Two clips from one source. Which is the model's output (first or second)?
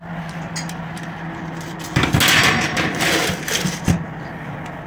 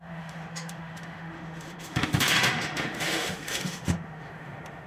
second